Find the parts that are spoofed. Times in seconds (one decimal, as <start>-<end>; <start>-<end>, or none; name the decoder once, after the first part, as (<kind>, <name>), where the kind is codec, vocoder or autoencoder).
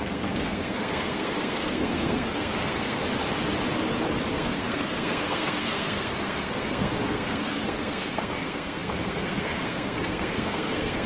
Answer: 0.0-3.0 (codec, SNAC); 4.3-11.1